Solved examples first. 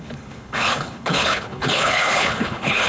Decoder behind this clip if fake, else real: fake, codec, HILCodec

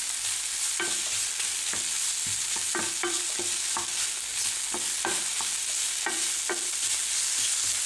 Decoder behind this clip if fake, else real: real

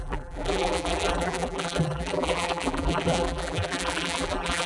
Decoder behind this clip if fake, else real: fake, vocoder, BigVGAN v2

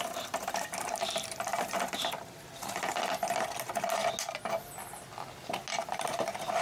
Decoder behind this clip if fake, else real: real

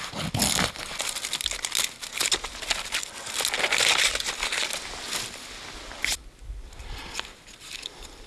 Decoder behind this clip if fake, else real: real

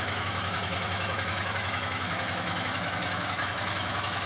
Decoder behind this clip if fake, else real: fake, autoencoder, DAC-VAE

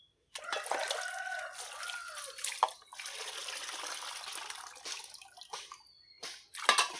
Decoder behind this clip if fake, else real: real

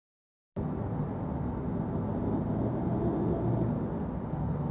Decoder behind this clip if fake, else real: real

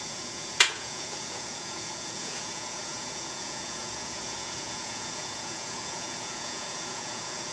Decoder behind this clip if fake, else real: fake, vocoder, Vocos